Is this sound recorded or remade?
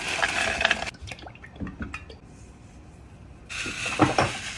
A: recorded